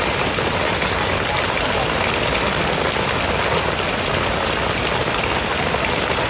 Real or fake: real